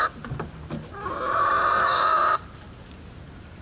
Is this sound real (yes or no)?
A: yes